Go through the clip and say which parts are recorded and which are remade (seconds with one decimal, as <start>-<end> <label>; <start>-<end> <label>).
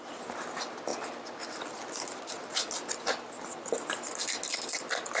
0.0-5.2 recorded